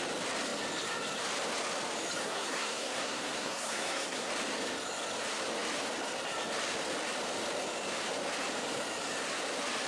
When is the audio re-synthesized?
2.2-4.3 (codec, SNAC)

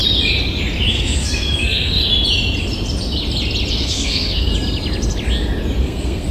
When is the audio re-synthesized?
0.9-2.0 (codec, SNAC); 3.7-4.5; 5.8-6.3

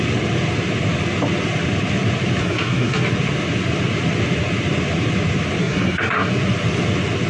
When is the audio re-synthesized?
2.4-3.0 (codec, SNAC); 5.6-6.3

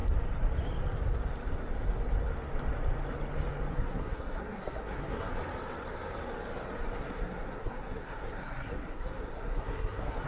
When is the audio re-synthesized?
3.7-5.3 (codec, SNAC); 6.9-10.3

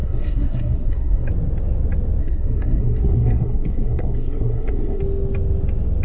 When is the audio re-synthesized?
0.0-1.3 (codec, SNAC); 2.2-5.0